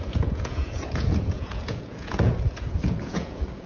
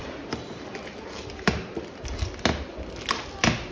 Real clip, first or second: second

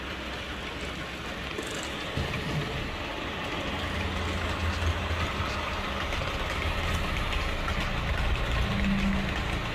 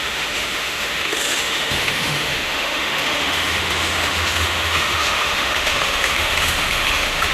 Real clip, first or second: first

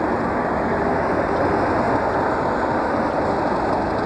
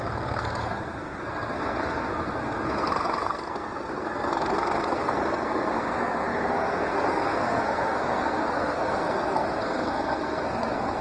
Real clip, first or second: first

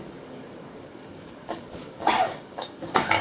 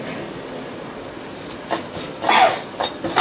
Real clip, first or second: second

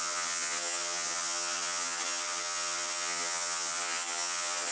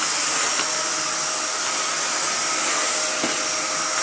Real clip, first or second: second